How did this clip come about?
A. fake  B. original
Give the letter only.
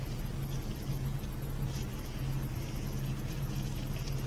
B